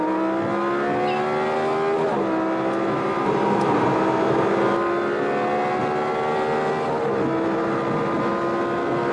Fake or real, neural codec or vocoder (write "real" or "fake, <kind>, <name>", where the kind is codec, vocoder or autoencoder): real